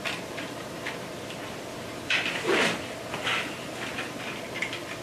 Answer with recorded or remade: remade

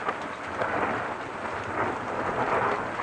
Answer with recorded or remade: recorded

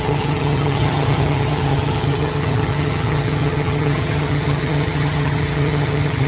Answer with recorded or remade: remade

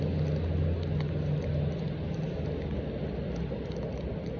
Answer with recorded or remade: recorded